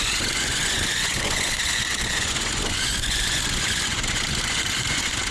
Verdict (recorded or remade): remade